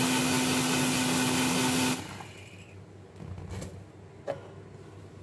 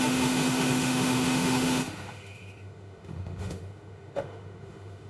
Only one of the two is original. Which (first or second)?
first